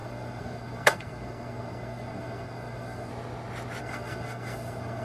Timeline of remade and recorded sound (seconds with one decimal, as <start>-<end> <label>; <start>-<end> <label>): 0.0-3.1 remade; 3.1-3.8 recorded; 3.8-5.0 remade